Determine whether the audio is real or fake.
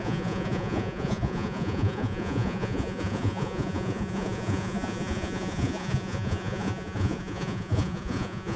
fake